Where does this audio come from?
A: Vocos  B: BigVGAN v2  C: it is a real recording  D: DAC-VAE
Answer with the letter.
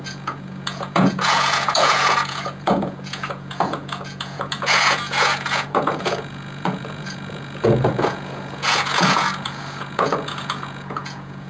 A